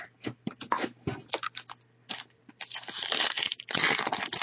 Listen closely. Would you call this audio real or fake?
real